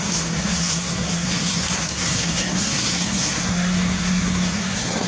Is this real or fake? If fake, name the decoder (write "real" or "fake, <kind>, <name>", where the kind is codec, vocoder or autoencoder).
fake, codec, SNAC